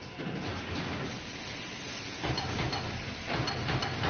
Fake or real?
real